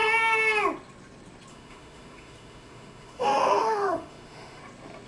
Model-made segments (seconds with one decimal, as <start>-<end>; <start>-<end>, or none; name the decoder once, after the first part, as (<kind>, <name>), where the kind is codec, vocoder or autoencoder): 1.5-4.6 (autoencoder, DAC-VAE)